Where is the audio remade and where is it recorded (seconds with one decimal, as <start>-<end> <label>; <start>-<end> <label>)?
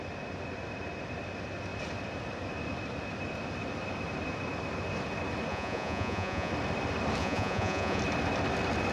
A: 0.0-5.5 recorded; 5.5-6.5 remade; 6.5-7.2 recorded; 7.2-8.0 remade; 8.0-8.9 recorded